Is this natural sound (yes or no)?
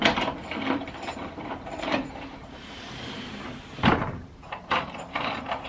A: no